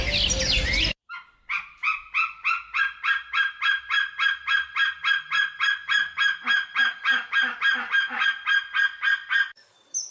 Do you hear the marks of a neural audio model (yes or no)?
no